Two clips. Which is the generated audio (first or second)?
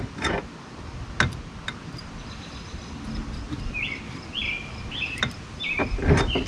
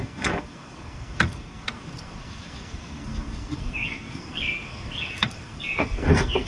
second